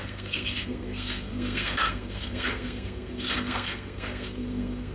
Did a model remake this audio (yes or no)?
yes